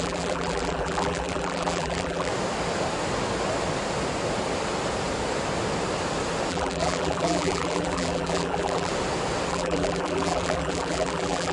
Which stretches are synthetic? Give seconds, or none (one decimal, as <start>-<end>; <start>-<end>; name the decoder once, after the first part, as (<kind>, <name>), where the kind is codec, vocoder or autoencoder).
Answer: 0.0-2.3 (vocoder, BigVGAN v2); 6.5-8.9; 9.5-11.5